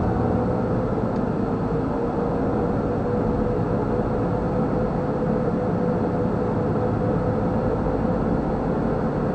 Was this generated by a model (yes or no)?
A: no